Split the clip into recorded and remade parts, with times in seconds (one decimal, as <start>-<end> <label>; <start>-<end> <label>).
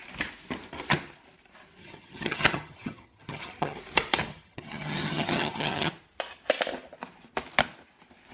0.0-1.8 recorded; 1.8-3.8 remade; 3.8-4.3 recorded; 4.3-5.9 remade; 5.9-8.3 recorded